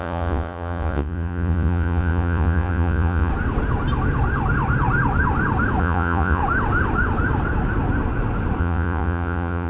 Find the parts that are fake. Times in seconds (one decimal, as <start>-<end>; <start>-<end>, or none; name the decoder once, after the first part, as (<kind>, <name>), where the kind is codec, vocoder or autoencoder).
0.0-3.3 (vocoder, Vocos); 5.8-6.4; 8.6-9.7